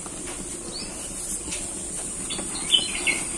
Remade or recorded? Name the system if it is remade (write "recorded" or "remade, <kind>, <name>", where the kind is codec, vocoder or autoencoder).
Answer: recorded